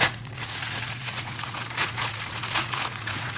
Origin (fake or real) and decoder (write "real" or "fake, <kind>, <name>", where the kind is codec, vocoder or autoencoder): fake, vocoder, Vocos